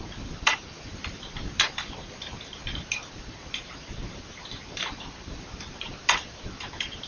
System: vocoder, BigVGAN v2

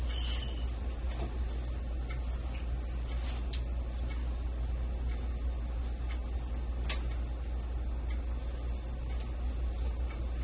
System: none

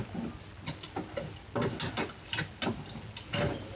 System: none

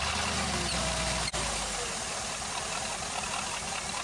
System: none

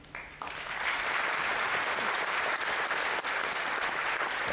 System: none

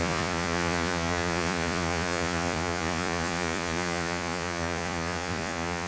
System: vocoder, Vocos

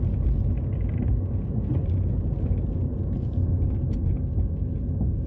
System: none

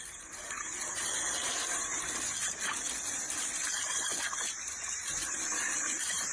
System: vocoder, BigVGAN v2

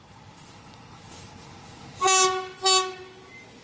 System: none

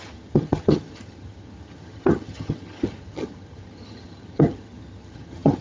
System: vocoder, HiFi-GAN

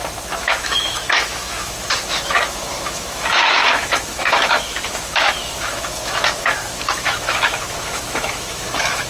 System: autoencoder, DAC-VAE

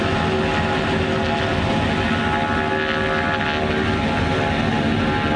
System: none